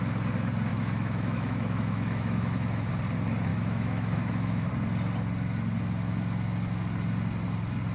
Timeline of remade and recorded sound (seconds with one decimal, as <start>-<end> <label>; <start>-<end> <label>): 0.0-0.7 recorded; 0.7-2.9 remade; 2.9-3.5 recorded; 3.5-4.7 remade; 4.7-7.9 recorded